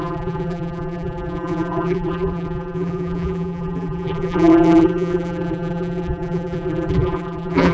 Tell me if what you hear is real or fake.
fake